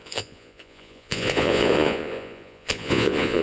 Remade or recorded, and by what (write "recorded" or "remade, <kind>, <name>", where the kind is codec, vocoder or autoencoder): remade, vocoder, Vocos